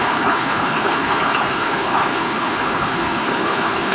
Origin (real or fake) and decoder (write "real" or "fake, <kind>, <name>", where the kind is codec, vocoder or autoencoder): fake, codec, HILCodec